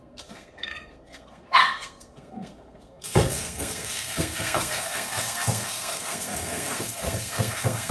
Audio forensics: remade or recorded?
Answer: remade